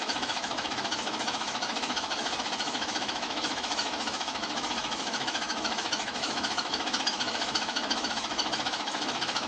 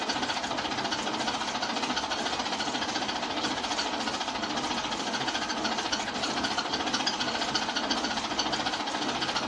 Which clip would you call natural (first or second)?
second